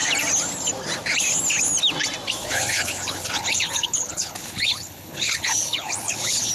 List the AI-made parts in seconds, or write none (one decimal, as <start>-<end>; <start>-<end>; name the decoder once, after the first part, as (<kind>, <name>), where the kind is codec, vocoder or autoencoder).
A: 2.4-6.5 (codec, HILCodec)